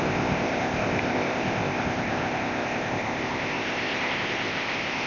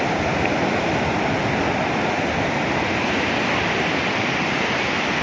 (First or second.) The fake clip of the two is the first